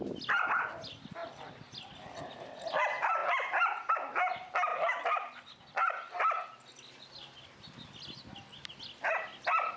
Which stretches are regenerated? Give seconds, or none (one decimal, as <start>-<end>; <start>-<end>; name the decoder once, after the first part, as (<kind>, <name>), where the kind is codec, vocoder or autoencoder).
none